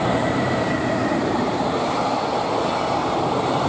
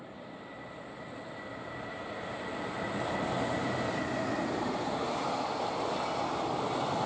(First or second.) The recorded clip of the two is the second